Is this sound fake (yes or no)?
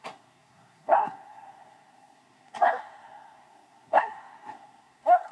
yes